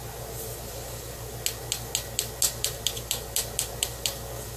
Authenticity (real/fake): real